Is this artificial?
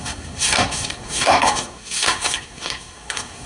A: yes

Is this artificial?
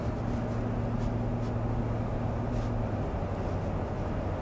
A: no